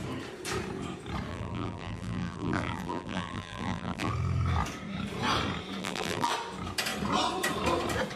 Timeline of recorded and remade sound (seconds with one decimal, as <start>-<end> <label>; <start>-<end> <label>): 0.0-1.3 recorded; 1.3-4.1 remade; 4.1-5.8 recorded; 5.8-6.3 remade; 6.3-8.2 recorded